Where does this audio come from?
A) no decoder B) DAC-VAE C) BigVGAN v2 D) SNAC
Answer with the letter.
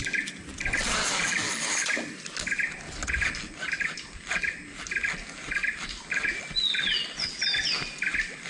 A